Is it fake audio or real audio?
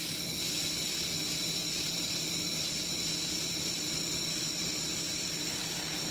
real